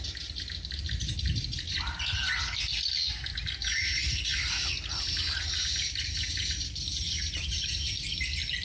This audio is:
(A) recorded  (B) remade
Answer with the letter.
A